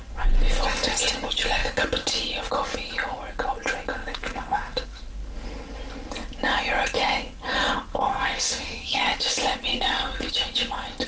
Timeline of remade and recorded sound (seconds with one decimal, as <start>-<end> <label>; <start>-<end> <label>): 0.0-4.0 recorded; 4.0-5.0 remade; 5.0-7.9 recorded; 7.9-9.0 remade; 9.0-9.7 recorded; 9.7-10.3 remade; 10.3-11.1 recorded